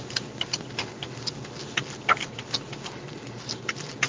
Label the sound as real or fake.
real